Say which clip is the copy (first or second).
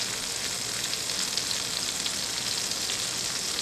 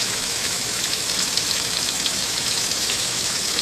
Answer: second